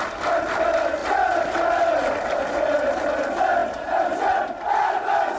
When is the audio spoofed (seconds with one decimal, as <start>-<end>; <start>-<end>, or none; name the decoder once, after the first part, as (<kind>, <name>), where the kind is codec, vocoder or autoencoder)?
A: none